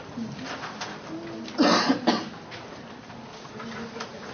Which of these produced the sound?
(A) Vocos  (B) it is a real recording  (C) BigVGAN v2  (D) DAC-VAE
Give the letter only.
B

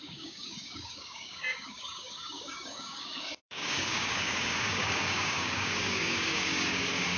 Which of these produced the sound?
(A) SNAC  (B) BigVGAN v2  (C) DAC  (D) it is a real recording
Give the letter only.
C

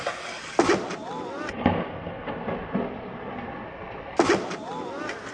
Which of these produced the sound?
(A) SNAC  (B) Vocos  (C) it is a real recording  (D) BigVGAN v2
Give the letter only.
C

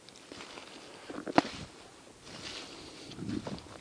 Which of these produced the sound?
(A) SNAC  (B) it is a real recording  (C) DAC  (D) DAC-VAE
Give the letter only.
B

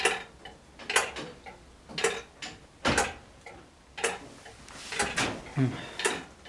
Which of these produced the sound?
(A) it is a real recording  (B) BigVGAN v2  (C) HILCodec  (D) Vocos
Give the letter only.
A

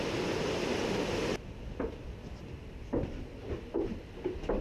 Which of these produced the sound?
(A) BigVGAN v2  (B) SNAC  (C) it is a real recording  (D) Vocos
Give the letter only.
C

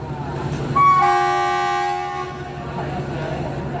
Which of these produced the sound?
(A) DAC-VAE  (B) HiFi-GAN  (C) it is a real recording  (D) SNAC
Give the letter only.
C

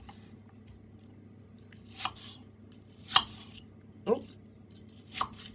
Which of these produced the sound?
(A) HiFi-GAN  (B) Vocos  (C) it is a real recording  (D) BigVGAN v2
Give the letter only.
C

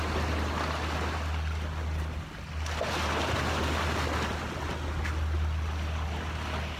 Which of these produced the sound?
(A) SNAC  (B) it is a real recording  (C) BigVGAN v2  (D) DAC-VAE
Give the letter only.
B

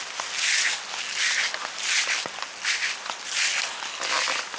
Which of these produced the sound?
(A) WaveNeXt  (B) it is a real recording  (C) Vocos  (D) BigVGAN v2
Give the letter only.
B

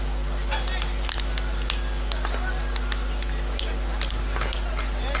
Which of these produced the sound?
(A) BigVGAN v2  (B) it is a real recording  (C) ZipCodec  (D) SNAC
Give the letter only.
B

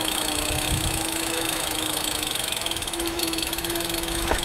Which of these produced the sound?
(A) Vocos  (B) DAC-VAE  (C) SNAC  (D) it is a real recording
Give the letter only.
B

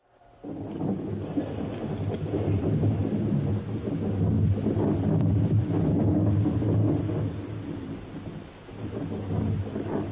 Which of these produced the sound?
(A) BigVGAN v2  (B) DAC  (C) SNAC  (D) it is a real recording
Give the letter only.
D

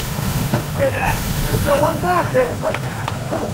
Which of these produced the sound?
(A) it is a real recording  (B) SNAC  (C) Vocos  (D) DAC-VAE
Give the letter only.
D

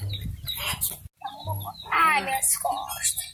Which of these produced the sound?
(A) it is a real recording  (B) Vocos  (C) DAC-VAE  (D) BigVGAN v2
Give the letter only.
A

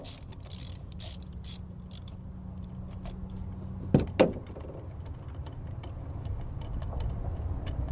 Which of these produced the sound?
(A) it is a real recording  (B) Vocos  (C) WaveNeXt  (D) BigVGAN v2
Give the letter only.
A